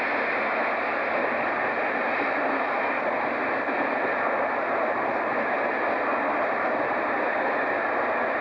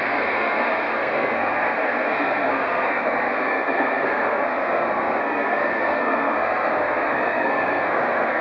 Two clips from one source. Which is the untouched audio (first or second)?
first